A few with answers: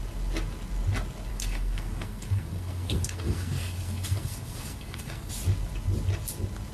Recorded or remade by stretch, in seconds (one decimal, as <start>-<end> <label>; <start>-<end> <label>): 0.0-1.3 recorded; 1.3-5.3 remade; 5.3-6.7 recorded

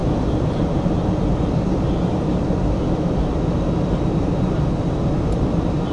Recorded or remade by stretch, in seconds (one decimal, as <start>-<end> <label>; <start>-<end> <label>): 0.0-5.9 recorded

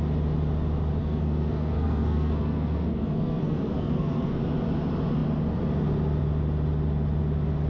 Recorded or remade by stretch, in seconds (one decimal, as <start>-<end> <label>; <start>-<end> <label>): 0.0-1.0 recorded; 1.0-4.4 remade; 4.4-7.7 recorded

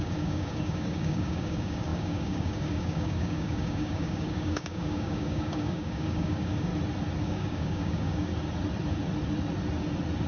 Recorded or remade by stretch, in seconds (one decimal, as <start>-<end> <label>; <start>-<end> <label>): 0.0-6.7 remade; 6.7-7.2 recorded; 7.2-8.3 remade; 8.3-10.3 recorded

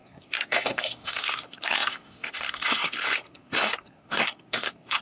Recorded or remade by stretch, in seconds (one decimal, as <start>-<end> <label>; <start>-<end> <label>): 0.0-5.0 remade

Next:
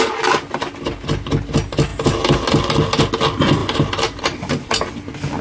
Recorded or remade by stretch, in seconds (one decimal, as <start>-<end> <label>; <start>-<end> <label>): 0.0-1.9 recorded; 1.9-3.0 remade; 3.0-3.6 recorded; 3.6-4.9 remade; 4.9-5.4 recorded

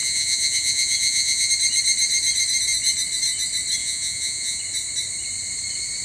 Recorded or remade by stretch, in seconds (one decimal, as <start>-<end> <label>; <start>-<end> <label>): 0.0-1.5 remade; 1.5-3.8 recorded; 3.8-4.6 remade; 4.6-6.0 recorded

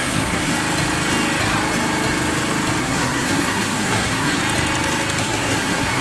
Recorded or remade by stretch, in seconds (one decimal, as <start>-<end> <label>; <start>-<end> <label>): 0.0-0.5 remade; 0.5-2.8 recorded; 2.8-4.4 remade; 4.4-5.2 recorded; 5.2-6.0 remade